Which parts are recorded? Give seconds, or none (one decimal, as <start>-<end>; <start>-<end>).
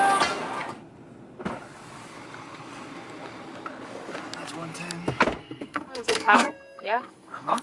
0.0-5.4